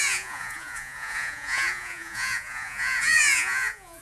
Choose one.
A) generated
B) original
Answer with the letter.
A